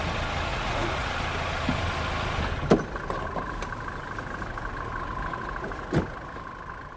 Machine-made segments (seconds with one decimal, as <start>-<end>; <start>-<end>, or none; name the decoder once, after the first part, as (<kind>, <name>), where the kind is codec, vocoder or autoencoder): 0.5-1.1 (vocoder, Vocos)